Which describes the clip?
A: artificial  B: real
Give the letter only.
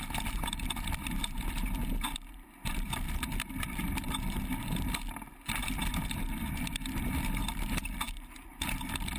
A